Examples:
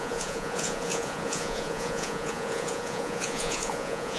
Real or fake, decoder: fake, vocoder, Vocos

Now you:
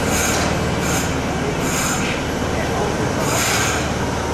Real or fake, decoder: real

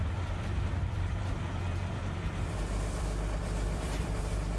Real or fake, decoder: fake, vocoder, BigVGAN v2